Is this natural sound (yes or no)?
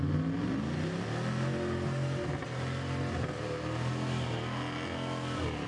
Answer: yes